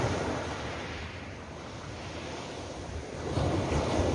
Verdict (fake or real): real